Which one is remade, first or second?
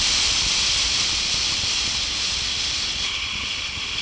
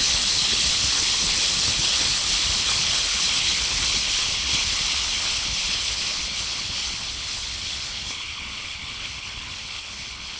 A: second